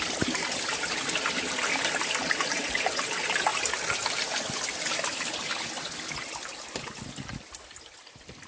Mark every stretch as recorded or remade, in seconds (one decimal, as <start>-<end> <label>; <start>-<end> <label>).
0.0-8.5 recorded